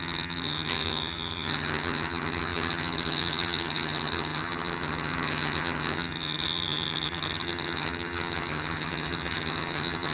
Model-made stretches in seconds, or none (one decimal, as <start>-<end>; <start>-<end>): 0.0-10.1